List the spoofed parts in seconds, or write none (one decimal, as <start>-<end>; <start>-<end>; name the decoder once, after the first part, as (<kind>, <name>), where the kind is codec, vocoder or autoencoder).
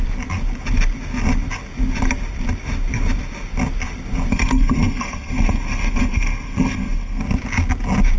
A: 4.3-7.2 (codec, SNAC)